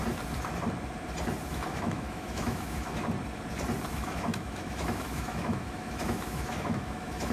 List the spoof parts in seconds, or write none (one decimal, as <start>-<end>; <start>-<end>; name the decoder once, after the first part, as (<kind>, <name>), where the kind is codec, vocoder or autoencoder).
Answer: 1.5-3.0 (autoencoder, DAC-VAE); 3.9-7.3